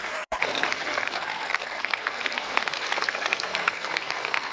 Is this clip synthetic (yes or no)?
yes